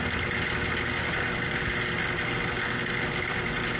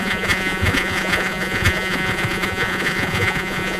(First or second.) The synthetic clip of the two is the second